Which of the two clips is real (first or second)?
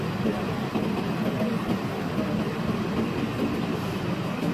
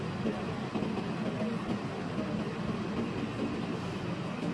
second